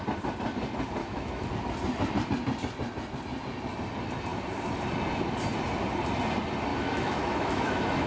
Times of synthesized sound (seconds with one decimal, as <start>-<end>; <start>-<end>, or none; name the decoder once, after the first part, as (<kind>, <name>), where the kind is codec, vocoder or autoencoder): 1.0-1.5 (autoencoder, DAC-VAE); 6.7-8.1